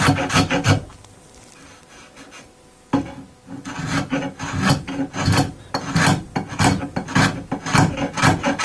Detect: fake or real real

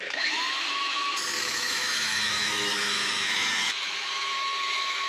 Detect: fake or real fake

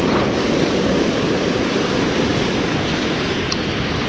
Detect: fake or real real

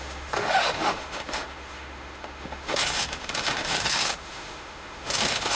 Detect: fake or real fake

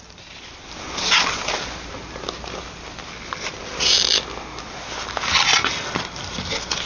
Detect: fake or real real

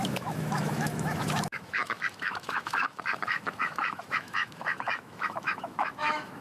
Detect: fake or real fake